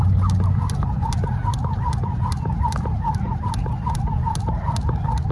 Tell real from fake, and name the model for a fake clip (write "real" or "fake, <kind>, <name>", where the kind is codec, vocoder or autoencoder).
real